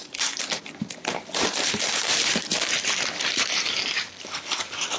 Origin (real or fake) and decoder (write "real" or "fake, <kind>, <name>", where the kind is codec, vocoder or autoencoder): fake, vocoder, BigVGAN v2